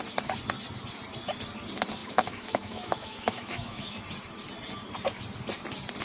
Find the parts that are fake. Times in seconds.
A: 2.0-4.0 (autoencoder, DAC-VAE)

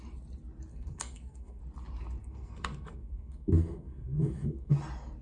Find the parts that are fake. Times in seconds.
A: 0.7-1.6 (codec, SNAC); 2.2-4.8